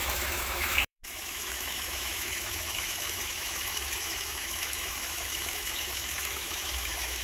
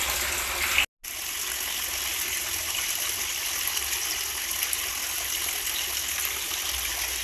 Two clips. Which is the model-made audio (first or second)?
first